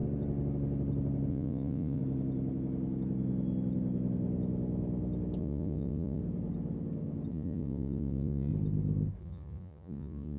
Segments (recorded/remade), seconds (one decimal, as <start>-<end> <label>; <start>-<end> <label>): 0.0-1.3 recorded; 1.3-2.0 remade; 2.0-5.4 recorded; 5.4-6.2 remade; 6.2-7.3 recorded; 7.3-8.5 remade; 8.5-9.2 recorded; 9.2-10.4 remade